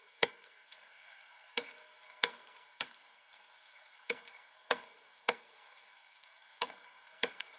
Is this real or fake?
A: fake